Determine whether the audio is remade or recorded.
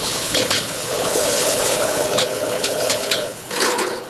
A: remade